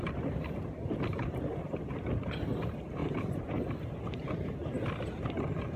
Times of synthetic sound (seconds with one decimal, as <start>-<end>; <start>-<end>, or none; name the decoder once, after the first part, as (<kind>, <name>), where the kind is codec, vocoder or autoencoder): 0.0-4.6 (vocoder, BigVGAN v2)